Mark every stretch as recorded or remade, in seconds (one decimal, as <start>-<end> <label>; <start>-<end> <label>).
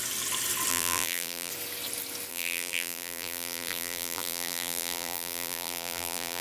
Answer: 0.0-0.7 recorded; 0.7-1.5 remade; 1.5-2.3 recorded; 2.3-6.4 remade